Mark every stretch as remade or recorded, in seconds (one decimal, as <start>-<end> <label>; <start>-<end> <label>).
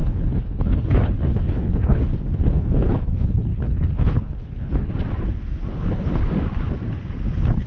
0.0-2.0 remade; 2.0-2.4 recorded; 2.4-4.9 remade; 4.9-5.7 recorded; 5.7-6.3 remade; 6.3-7.7 recorded